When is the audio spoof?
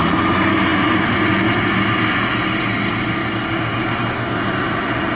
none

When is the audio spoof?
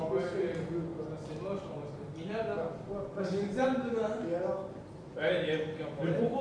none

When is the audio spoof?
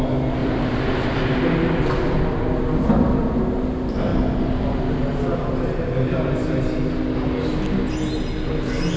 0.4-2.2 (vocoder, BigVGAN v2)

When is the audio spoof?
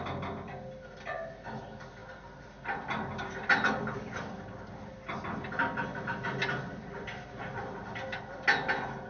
none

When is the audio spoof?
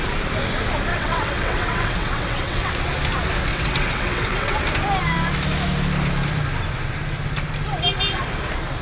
0.9-2.7 (vocoder, WaveNeXt); 3.5-4.6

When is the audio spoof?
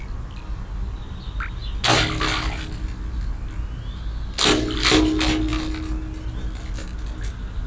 none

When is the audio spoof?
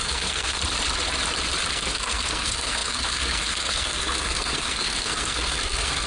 0.0-0.6 (codec, SNAC); 1.7-6.1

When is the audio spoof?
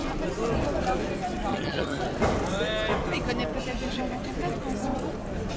1.5-2.0 (vocoder, HiFi-GAN)